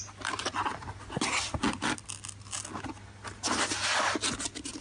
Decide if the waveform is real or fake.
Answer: real